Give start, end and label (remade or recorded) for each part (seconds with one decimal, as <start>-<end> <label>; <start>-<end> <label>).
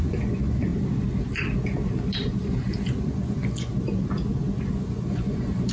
0.0-0.7 remade; 0.7-3.0 recorded; 3.0-3.7 remade; 3.7-4.7 recorded; 4.7-5.7 remade